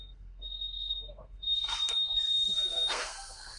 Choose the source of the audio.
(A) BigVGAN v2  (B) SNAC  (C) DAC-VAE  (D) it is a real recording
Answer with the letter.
B